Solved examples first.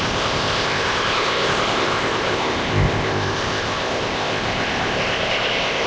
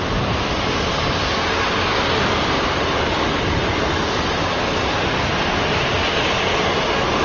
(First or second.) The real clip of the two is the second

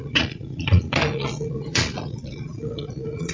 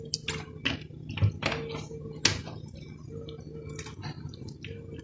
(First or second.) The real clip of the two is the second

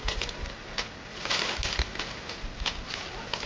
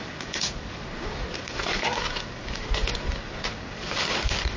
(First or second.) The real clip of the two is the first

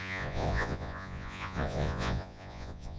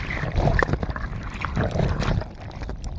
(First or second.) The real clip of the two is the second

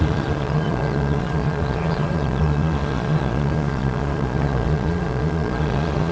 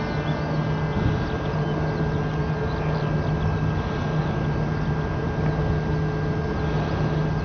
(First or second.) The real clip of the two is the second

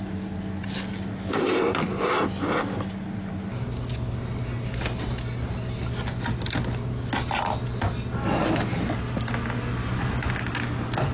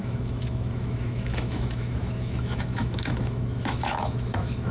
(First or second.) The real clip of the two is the first